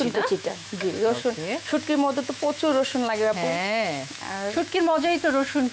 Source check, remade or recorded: remade